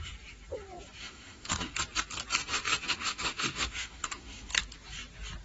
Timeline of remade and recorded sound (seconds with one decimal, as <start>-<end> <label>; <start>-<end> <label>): 0.0-1.0 recorded; 1.0-1.8 remade; 1.8-2.4 recorded; 2.4-4.5 remade; 4.5-5.4 recorded